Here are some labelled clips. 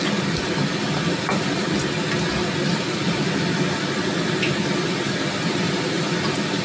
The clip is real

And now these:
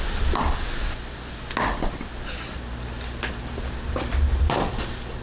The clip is real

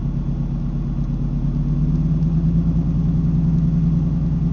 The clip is real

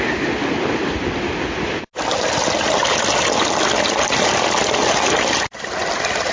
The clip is real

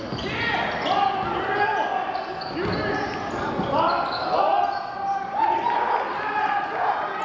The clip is real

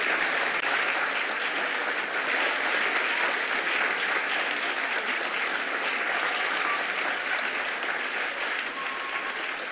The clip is real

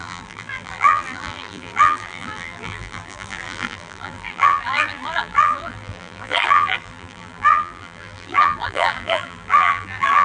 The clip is fake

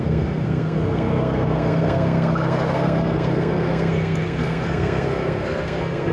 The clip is fake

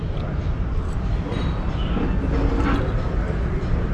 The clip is real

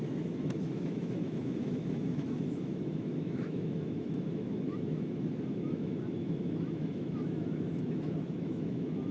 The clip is fake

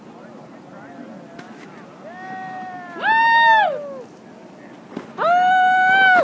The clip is real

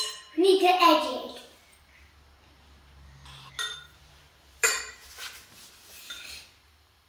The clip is real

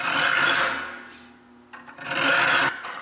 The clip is real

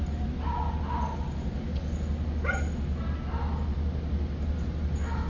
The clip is real